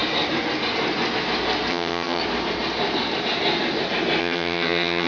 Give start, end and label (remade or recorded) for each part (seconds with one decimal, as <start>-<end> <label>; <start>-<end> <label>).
0.0-1.7 recorded; 1.7-2.2 remade; 2.2-4.2 recorded; 4.2-5.1 remade